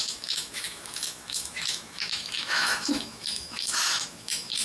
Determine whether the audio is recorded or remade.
remade